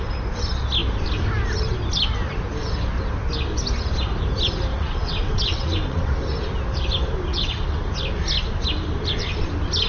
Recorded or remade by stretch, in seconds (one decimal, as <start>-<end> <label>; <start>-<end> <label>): 0.0-4.7 recorded; 4.7-6.1 remade; 6.1-7.3 recorded; 7.3-7.9 remade; 7.9-9.9 recorded